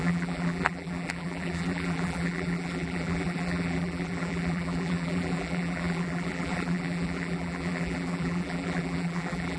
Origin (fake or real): fake